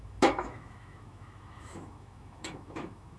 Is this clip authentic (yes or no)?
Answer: no